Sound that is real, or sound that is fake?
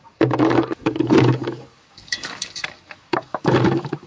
fake